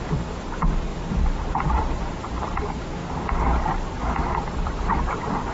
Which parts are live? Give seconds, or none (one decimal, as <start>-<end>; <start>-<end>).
3.0-4.0